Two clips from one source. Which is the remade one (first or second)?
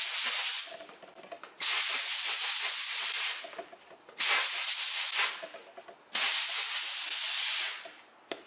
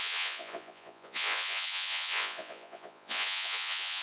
second